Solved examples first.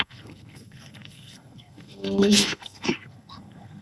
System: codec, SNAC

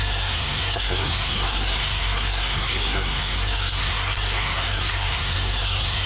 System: codec, SNAC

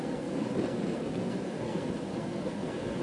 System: codec, SNAC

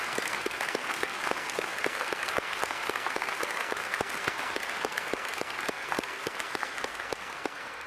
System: codec, SNAC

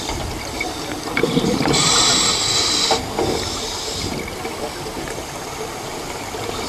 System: none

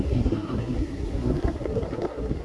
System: codec, SNAC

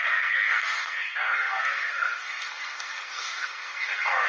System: codec, SNAC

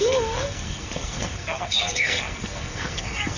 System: codec, SNAC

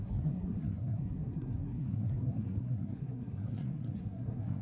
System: codec, SNAC